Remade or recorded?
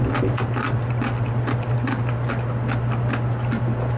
recorded